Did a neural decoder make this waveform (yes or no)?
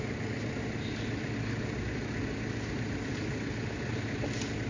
no